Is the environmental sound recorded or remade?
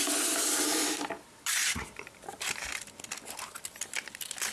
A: recorded